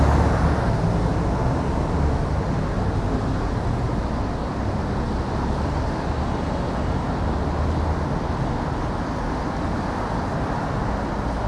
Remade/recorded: recorded